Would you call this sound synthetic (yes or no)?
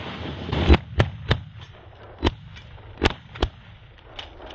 no